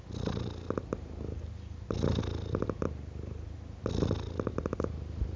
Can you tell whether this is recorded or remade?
recorded